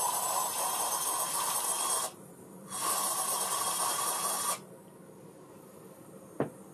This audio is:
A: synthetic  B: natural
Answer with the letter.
B